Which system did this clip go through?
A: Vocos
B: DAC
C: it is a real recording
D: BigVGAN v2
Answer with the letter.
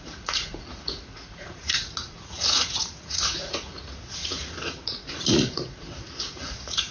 A